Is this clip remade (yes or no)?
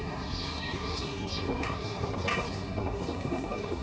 yes